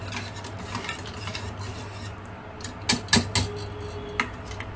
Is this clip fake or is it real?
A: real